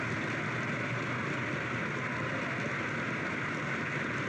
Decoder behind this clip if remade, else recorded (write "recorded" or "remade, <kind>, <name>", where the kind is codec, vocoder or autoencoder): recorded